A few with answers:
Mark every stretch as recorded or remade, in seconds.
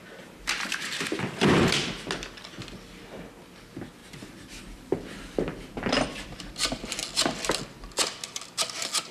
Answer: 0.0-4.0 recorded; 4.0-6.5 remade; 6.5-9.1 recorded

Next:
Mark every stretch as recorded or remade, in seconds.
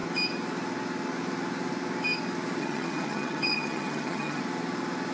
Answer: 0.0-2.6 recorded; 2.6-4.4 remade; 4.4-5.1 recorded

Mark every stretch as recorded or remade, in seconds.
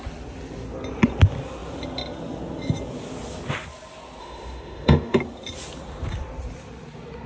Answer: 0.0-4.2 recorded; 4.2-5.2 remade; 5.2-7.3 recorded